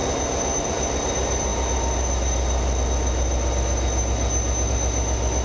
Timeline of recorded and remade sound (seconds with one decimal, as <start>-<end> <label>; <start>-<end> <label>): 0.0-0.6 recorded; 0.6-1.5 remade; 1.5-4.7 recorded; 4.7-5.4 remade